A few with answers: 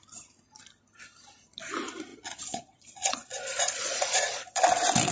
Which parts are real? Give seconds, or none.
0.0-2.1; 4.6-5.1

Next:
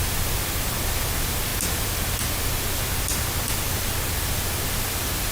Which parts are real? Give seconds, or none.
0.0-5.3

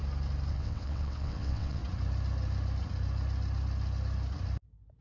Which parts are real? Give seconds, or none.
0.0-0.5; 1.8-5.0